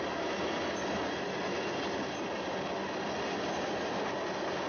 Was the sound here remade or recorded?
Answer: recorded